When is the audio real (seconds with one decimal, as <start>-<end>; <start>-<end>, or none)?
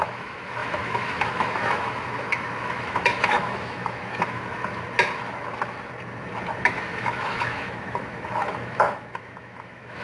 4.5-6.6